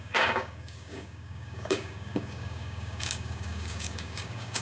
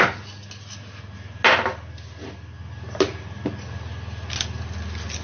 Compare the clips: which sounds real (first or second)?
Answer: second